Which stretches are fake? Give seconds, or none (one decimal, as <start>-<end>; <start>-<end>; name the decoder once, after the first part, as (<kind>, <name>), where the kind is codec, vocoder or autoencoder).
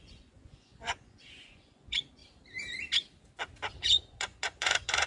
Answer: 0.0-2.2 (vocoder, Vocos); 3.8-5.1